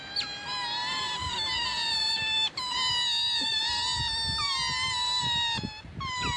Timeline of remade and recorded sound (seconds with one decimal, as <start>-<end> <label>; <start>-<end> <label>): 0.0-1.3 recorded; 1.3-2.6 remade; 2.6-6.4 recorded